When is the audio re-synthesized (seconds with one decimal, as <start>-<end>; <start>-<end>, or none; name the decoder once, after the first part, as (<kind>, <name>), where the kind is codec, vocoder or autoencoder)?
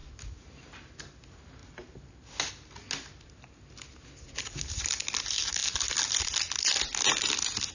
none